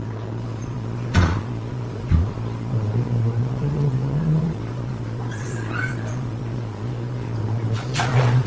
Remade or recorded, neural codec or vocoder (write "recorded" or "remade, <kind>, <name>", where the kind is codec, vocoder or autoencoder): remade, vocoder, Vocos